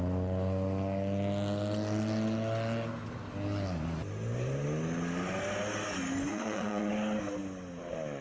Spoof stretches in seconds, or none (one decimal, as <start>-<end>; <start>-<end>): 6.3-6.9